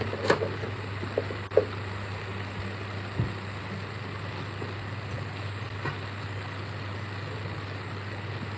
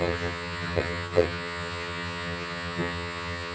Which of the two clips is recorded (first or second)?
first